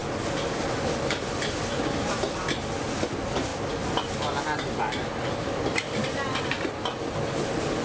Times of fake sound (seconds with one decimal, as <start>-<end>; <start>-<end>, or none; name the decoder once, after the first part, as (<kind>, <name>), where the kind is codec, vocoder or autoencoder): none